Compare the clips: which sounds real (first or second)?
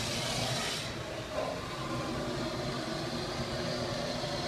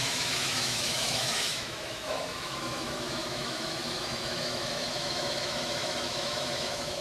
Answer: first